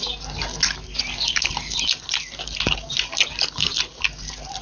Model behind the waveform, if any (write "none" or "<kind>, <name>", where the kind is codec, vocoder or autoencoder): none